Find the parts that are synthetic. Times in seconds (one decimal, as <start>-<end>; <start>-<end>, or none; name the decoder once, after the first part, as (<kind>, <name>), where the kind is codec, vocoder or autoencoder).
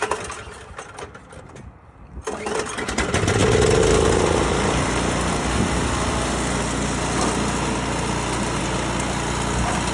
none